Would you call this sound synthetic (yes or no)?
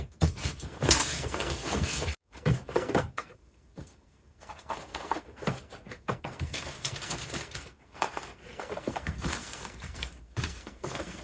yes